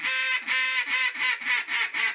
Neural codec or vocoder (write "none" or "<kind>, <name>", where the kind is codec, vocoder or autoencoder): none